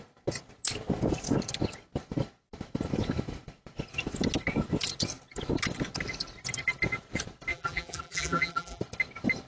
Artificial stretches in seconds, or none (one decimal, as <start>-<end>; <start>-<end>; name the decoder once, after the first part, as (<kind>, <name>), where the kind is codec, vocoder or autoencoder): 7.5-8.8 (vocoder, BigVGAN v2)